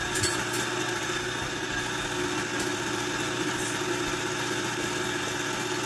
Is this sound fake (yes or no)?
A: no